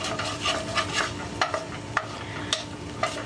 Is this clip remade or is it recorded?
recorded